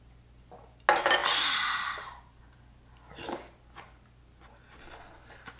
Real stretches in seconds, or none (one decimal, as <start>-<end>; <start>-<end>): 0.0-5.6